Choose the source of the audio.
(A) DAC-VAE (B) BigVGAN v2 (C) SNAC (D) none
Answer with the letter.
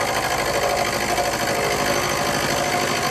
D